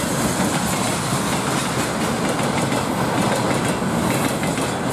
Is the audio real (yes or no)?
yes